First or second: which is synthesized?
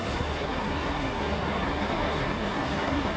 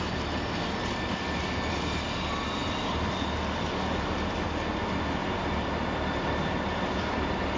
first